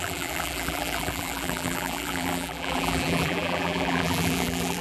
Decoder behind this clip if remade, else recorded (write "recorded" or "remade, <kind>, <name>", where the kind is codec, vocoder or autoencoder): remade, vocoder, BigVGAN v2